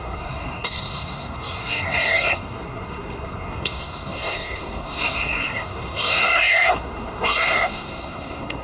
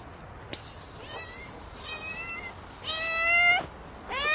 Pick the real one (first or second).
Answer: second